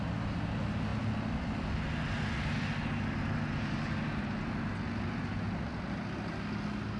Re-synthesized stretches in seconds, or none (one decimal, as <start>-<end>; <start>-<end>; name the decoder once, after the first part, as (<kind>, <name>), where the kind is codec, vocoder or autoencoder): none